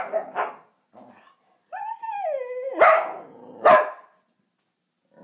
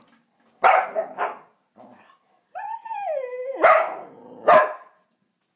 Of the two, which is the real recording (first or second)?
first